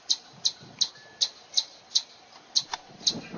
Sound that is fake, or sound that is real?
real